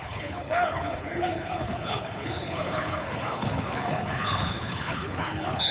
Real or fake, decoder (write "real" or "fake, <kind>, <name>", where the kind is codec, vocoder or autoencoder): fake, codec, HILCodec